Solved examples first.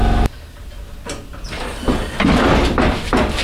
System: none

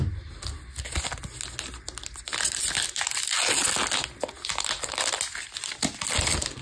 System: none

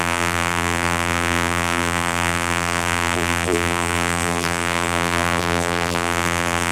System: vocoder, BigVGAN v2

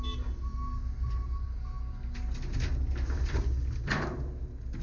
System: none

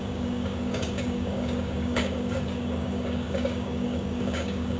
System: codec, DAC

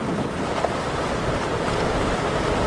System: none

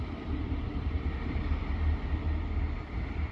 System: none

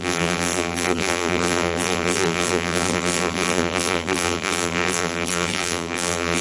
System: vocoder, BigVGAN v2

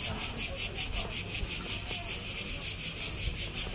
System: none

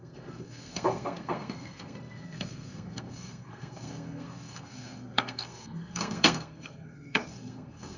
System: codec, SNAC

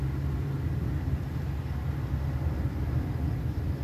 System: none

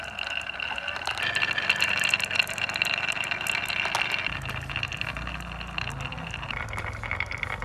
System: none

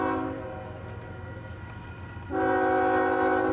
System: none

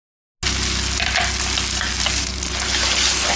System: none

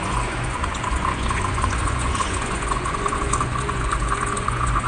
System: vocoder, Vocos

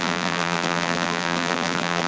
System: vocoder, BigVGAN v2